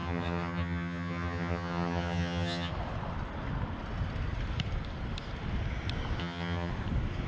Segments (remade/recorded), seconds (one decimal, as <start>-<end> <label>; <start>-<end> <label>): 0.0-2.7 remade; 2.7-6.2 recorded; 6.2-6.7 remade; 6.7-7.3 recorded